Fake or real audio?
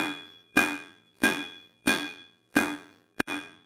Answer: fake